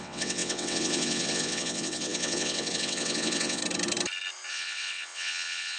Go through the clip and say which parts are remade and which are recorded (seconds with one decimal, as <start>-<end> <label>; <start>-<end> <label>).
0.0-3.6 remade; 3.6-4.5 recorded; 4.5-5.8 remade